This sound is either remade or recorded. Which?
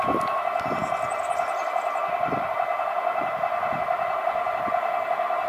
recorded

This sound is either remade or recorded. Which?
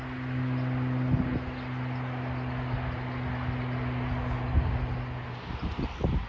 recorded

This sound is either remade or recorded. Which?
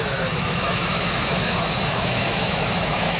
remade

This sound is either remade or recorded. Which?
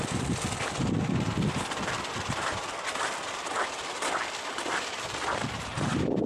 remade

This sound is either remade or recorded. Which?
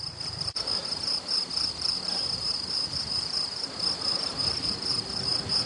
recorded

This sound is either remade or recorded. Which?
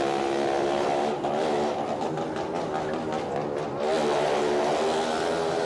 recorded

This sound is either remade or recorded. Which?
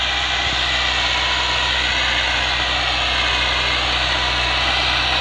recorded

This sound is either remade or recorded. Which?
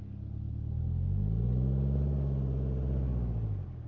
recorded